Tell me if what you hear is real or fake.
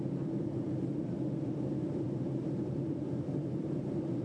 fake